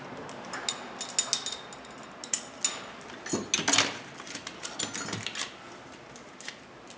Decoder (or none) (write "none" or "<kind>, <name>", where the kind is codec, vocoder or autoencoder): none